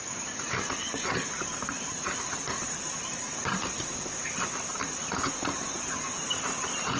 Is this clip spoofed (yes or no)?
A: yes